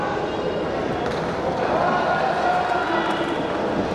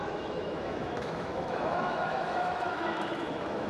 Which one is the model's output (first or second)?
second